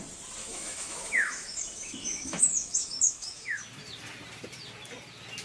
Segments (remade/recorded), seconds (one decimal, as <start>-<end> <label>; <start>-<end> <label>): 0.0-0.4 recorded; 0.4-3.6 remade; 3.6-5.4 recorded